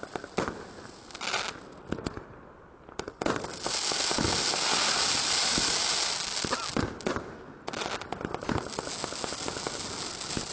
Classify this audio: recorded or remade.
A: recorded